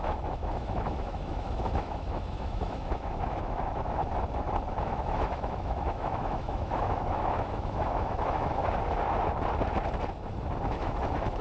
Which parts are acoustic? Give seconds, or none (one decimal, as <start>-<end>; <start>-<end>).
4.0-4.8; 8.6-10.7